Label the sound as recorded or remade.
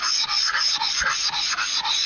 remade